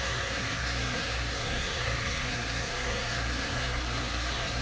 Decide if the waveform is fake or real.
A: fake